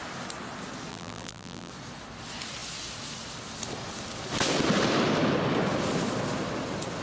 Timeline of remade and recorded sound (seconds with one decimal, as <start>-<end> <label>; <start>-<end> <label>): 0.0-0.9 recorded; 0.9-1.7 remade; 1.7-7.0 recorded